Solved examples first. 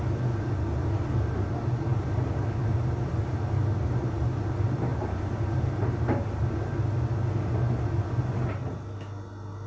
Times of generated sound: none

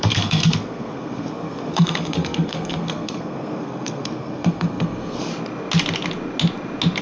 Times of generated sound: 0.0-5.3 (codec, SNAC)

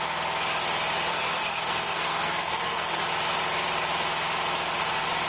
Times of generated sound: 1.1-3.0 (codec, SNAC)

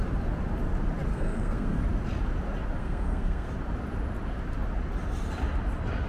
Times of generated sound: 1.1-1.8 (codec, SNAC); 2.8-3.5

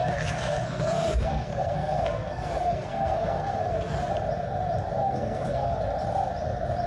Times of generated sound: 0.0-4.1 (codec, SNAC); 5.0-5.8

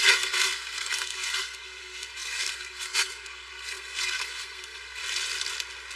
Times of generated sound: 0.0-5.0 (codec, SNAC)

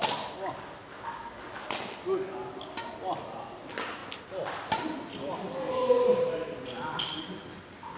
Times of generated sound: none

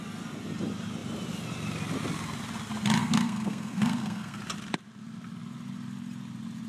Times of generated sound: 3.0-4.4 (codec, SNAC)